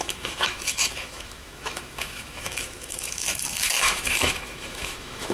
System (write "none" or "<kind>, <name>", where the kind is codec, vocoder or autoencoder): autoencoder, DAC-VAE